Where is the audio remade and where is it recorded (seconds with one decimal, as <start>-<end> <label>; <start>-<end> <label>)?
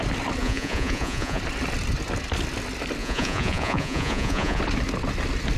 0.0-0.4 recorded; 0.4-1.4 remade; 1.4-3.0 recorded; 3.0-4.6 remade; 4.6-5.6 recorded